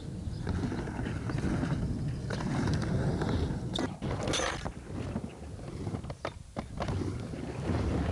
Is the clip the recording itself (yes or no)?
yes